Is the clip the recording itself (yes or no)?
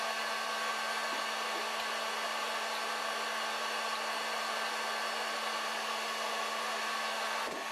yes